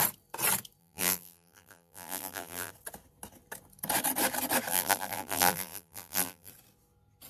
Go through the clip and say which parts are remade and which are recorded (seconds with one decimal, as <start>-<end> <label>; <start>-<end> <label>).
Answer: 0.0-0.8 recorded; 0.8-2.7 remade; 2.7-4.7 recorded; 4.7-6.5 remade; 6.5-7.3 recorded